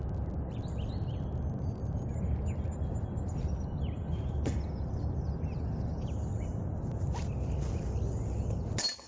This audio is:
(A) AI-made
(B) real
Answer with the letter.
B